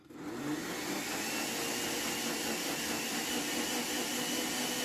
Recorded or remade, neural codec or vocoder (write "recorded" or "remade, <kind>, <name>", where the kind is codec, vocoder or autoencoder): recorded